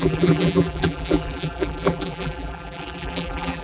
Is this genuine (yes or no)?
no